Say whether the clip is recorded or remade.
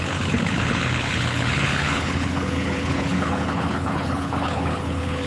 remade